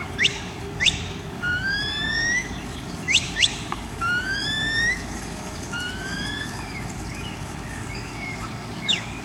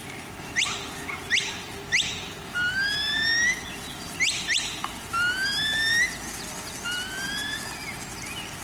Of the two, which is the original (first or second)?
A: second